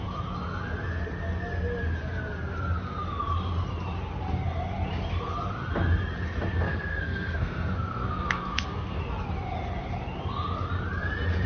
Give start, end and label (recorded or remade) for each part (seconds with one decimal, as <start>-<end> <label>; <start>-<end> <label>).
0.0-6.5 recorded; 6.5-9.0 remade; 9.0-11.5 recorded